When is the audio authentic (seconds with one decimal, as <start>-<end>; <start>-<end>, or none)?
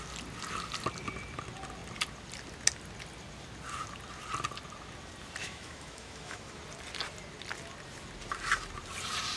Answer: 0.0-5.4; 6.6-9.4